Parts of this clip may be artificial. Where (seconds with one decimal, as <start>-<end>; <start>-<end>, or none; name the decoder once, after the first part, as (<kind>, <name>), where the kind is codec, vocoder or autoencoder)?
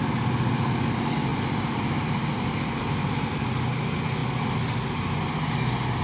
none